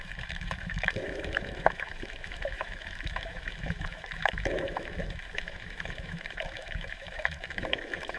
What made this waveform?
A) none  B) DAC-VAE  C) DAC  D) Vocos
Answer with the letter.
B